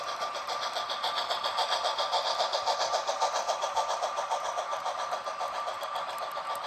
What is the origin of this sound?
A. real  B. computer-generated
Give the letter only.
B